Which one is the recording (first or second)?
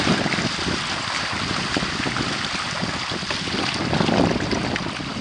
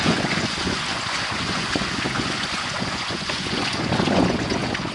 first